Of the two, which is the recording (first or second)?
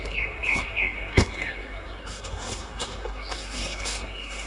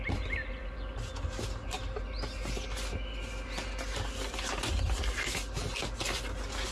second